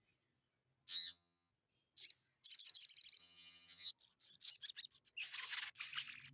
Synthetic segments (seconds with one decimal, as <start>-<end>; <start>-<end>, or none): 0.9-1.5; 3.2-3.9